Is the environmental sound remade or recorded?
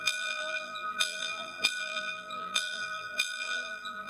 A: remade